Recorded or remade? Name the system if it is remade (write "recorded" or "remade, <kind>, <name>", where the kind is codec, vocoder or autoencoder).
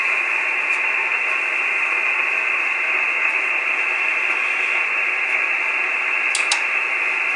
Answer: recorded